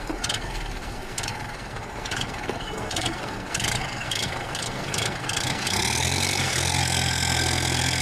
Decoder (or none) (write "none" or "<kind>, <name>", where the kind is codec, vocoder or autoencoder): codec, SNAC